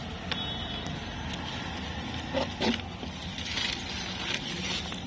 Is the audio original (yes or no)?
yes